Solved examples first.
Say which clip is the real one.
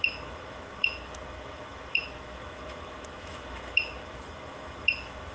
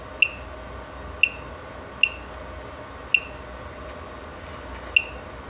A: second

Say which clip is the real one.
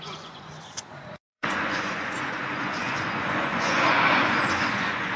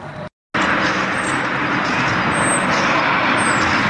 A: second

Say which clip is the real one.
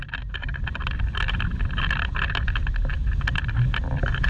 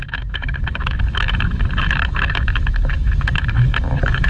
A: first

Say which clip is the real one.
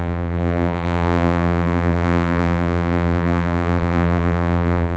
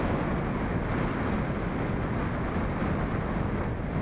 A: second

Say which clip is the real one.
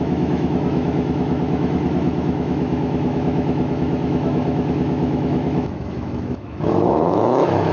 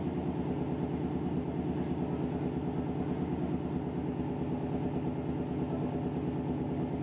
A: second